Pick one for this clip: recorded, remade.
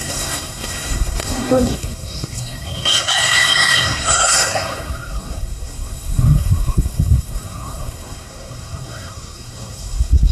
remade